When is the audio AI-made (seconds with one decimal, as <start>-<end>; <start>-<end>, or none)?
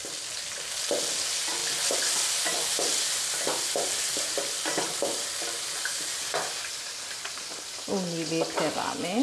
none